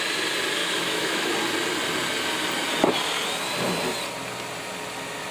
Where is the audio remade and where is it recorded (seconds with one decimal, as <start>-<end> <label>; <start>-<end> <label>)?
0.0-0.6 recorded; 0.6-1.3 remade; 1.3-5.3 recorded